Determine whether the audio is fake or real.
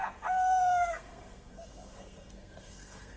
fake